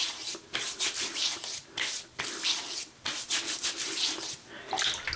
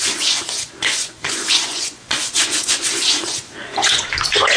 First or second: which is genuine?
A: first